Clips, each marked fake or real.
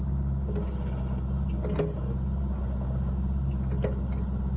real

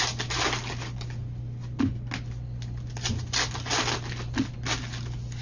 real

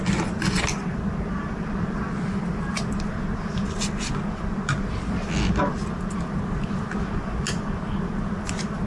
real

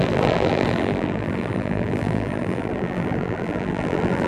fake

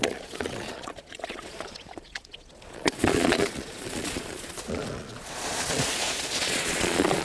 fake